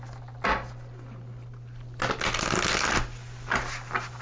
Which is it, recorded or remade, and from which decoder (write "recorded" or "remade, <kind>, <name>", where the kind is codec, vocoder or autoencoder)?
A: recorded